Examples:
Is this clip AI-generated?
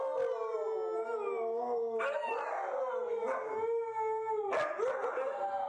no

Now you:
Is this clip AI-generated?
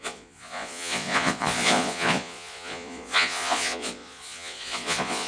yes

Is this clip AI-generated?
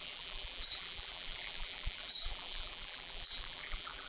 yes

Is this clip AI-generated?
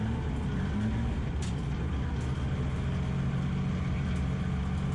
no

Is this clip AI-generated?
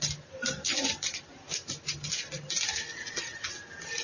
no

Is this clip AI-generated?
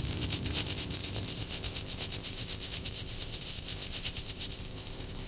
yes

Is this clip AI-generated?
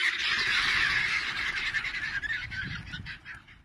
no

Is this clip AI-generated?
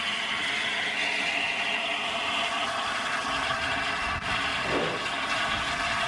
no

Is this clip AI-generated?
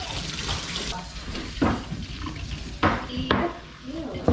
no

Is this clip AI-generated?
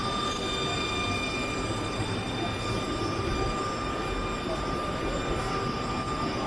no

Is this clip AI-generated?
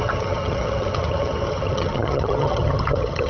yes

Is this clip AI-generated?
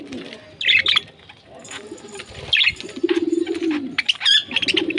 no